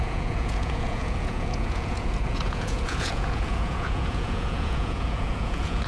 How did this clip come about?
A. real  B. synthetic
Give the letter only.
B